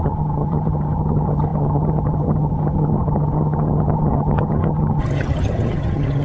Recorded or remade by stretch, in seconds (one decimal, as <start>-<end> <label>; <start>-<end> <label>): 0.0-6.2 remade